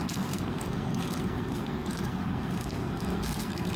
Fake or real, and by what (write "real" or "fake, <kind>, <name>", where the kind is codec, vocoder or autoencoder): fake, codec, SNAC